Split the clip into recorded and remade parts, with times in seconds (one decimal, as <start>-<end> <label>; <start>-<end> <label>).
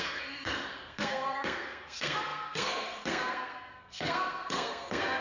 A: 0.0-5.2 remade